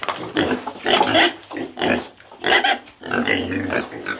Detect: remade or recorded recorded